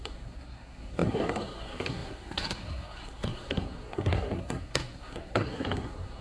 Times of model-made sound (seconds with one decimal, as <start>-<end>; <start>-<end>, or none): 0.0-6.2